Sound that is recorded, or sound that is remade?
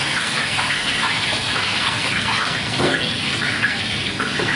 remade